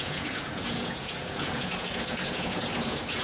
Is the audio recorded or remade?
remade